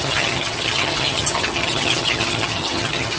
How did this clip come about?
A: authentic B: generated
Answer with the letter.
B